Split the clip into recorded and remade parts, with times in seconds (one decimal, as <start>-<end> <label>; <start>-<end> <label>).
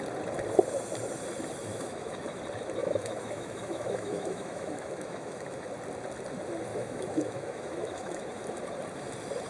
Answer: 0.0-1.7 recorded; 1.7-2.4 remade; 2.4-2.8 recorded; 2.8-5.7 remade; 5.7-6.7 recorded; 6.7-8.4 remade; 8.4-9.5 recorded